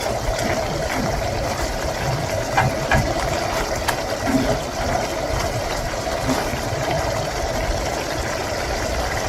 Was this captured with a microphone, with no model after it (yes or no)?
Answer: no